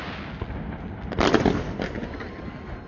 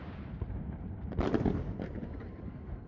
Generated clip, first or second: second